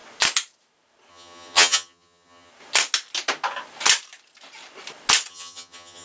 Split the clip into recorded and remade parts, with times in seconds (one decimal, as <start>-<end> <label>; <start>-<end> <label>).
0.0-1.1 recorded; 1.1-2.5 remade; 2.5-5.3 recorded; 5.3-6.0 remade

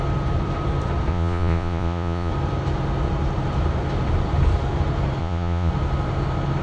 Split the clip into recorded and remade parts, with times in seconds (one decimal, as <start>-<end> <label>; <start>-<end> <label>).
0.0-1.1 recorded; 1.1-2.3 remade; 2.3-5.2 recorded; 5.2-5.7 remade; 5.7-6.6 recorded

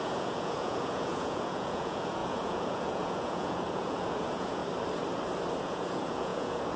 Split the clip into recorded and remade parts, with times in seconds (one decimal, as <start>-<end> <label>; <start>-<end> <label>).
0.0-4.6 remade; 4.6-5.6 recorded; 5.6-6.8 remade

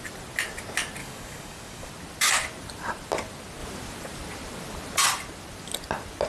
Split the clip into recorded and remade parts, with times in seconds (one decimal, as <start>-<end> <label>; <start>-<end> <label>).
0.0-1.0 recorded; 1.0-1.9 remade; 1.9-6.3 recorded

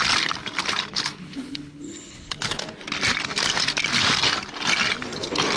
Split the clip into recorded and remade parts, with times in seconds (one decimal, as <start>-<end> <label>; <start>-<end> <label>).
0.0-0.9 recorded; 0.9-2.6 remade; 2.6-5.6 recorded